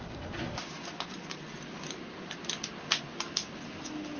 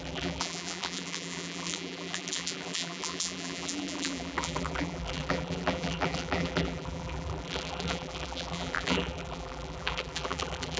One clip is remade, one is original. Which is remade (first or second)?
second